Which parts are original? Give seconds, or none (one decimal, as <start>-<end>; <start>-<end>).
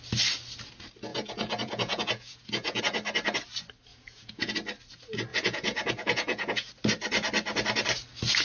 0.0-1.1; 2.8-3.9; 4.5-5.3; 6.7-8.4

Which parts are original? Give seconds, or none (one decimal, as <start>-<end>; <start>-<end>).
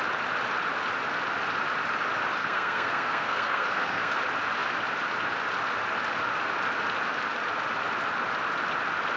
0.0-2.4; 4.1-9.2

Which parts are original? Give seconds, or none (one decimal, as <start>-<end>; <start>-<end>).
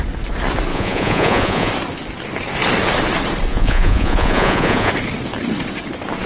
0.0-0.7; 1.7-3.5; 4.9-6.3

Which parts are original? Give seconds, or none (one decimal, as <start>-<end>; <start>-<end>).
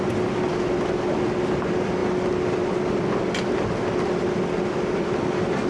0.0-5.7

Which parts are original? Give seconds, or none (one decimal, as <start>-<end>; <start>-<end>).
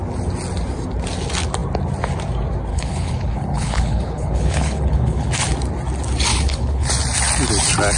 0.0-2.7; 5.3-6.3; 6.9-8.0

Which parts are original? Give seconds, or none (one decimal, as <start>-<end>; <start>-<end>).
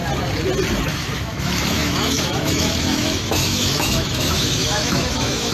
0.0-0.8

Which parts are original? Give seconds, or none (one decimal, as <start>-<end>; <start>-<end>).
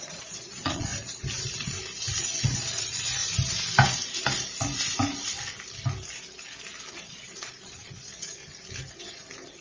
0.9-2.2; 3.2-6.9; 8.4-8.9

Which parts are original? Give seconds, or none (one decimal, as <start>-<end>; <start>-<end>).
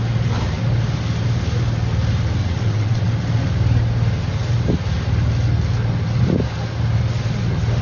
0.0-2.4; 3.1-7.8